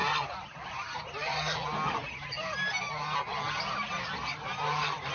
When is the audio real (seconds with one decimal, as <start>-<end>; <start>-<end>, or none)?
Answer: 0.0-5.1